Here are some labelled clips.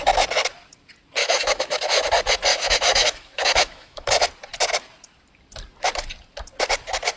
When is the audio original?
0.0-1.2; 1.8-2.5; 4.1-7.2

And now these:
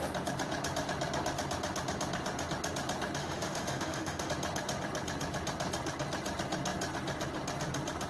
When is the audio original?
0.0-3.2; 4.3-8.1

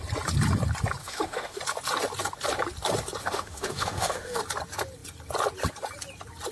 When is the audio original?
0.0-1.0; 1.6-3.2; 4.4-6.5

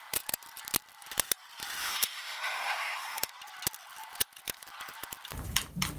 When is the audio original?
0.0-1.8; 3.3-6.0

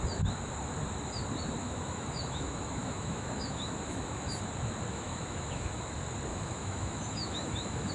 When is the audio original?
0.0-1.6; 4.4-4.9; 5.8-6.3

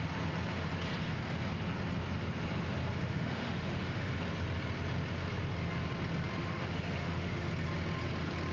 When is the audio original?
0.0-3.0; 4.1-6.4; 7.5-8.5

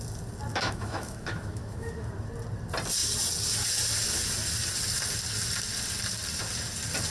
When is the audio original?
0.0-0.5; 2.1-7.1